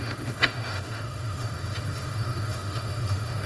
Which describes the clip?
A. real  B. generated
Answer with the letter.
B